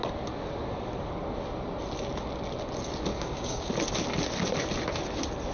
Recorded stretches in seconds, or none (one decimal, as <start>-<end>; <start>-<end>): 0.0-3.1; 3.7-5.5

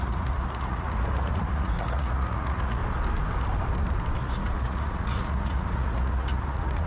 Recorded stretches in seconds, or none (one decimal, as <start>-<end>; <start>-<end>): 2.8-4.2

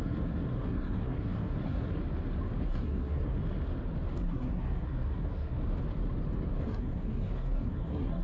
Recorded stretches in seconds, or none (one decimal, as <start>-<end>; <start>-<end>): 2.0-2.6; 3.4-4.2; 5.6-6.6